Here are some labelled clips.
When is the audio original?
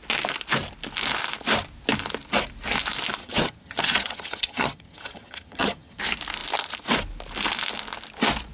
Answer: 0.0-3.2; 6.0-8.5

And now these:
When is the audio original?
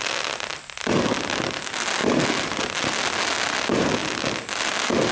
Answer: 0.0-5.1